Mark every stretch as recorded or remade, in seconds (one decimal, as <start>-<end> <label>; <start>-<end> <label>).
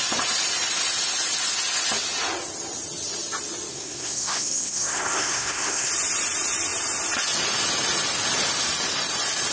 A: 0.0-3.7 recorded; 3.7-5.9 remade; 5.9-9.5 recorded